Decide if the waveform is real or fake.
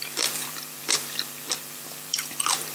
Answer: fake